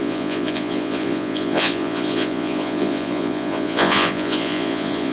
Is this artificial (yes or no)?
yes